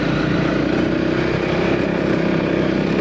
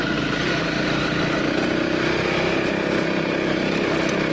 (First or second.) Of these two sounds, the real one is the second